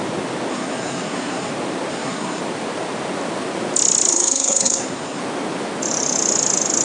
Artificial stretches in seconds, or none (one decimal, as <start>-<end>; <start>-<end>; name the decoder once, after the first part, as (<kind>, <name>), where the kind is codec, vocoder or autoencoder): 0.5-1.5 (codec, SNAC); 1.9-2.4; 4.1-5.2